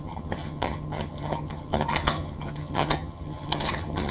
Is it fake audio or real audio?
fake